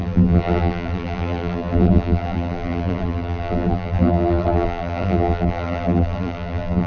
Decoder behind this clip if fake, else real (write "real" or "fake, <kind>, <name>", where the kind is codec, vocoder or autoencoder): fake, vocoder, BigVGAN v2